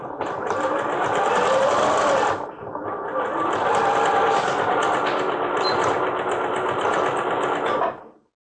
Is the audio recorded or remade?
recorded